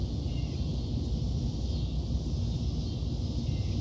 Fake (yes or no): no